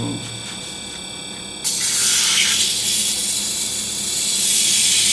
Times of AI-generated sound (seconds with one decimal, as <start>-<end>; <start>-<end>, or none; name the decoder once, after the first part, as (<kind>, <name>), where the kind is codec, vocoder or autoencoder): none